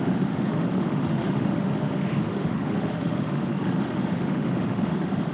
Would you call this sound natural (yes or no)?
no